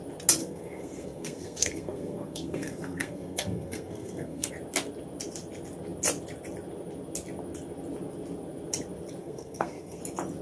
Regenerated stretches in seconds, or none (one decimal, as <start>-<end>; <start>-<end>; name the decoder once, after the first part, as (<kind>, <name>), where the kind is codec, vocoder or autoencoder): 0.4-4.5 (codec, SNAC); 9.2-10.0

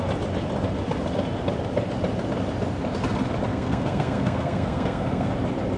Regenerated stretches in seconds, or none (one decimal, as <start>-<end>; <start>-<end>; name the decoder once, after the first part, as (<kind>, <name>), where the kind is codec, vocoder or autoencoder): 3.5-5.3 (codec, SNAC)

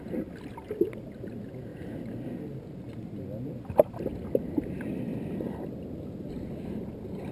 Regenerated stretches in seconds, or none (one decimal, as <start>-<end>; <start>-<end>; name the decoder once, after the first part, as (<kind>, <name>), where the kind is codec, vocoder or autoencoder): none

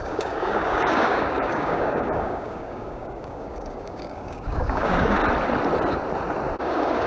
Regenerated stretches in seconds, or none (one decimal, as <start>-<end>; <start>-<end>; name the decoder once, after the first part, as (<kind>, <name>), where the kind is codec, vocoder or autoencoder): 0.0-5.2 (codec, DAC); 6.6-7.1